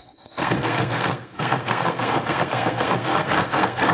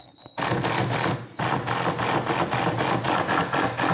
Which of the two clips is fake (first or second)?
first